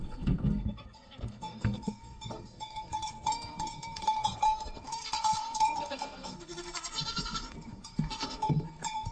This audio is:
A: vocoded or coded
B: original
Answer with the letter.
A